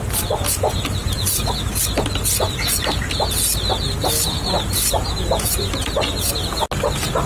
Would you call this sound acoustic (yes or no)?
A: yes